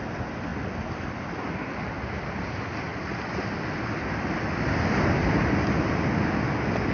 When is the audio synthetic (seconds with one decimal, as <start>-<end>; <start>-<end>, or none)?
none